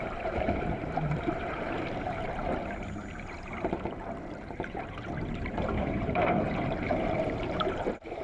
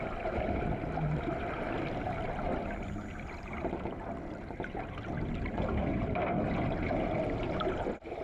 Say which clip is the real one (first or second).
second